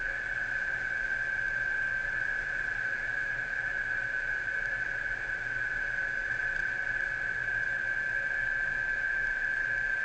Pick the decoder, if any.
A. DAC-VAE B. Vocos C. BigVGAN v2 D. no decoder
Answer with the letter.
D